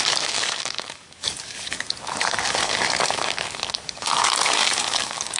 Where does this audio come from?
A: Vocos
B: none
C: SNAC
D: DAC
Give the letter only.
D